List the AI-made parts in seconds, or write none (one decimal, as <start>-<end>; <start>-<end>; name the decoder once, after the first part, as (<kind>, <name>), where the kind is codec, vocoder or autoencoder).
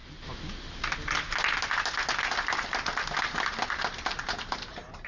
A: none